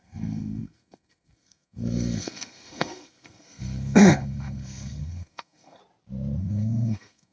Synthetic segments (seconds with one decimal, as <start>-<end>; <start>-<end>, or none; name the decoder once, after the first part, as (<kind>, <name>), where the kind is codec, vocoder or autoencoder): 0.0-5.8 (codec, SNAC); 6.4-7.3